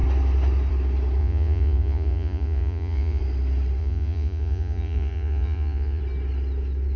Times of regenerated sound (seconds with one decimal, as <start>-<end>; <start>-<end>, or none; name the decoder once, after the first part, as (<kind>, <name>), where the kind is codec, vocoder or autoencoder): 1.2-3.2 (vocoder, Vocos); 3.8-6.0